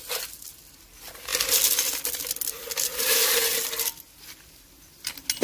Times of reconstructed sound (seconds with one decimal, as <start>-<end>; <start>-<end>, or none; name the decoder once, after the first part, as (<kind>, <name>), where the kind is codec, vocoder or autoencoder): none